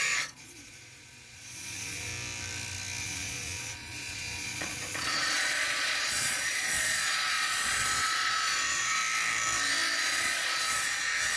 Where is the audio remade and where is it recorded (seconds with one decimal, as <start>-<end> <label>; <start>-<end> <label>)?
0.0-2.1 remade; 2.1-3.0 recorded; 3.0-9.0 remade; 9.0-10.0 recorded; 10.0-11.4 remade